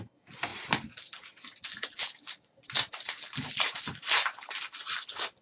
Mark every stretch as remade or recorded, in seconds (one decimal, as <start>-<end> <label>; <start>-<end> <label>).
0.0-1.7 recorded; 1.7-4.6 remade; 4.6-5.4 recorded